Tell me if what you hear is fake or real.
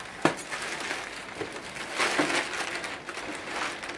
real